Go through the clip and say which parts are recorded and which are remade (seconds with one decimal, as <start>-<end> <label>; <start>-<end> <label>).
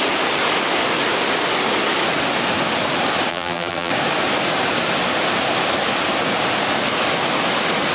0.0-3.3 recorded; 3.3-3.9 remade; 3.9-7.9 recorded